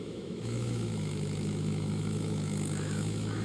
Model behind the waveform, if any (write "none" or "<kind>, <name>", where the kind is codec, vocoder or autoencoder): autoencoder, DAC-VAE